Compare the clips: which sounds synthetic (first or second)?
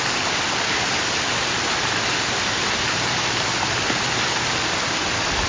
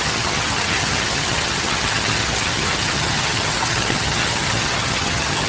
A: second